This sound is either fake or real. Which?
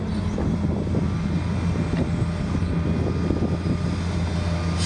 real